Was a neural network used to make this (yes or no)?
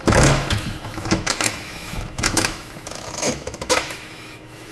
yes